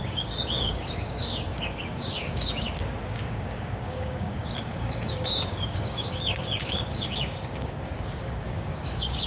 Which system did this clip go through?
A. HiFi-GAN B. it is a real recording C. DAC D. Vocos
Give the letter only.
C